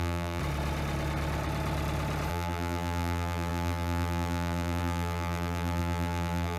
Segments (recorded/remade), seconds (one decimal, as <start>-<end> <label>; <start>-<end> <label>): 0.0-0.4 remade; 0.4-2.3 recorded; 2.3-6.6 remade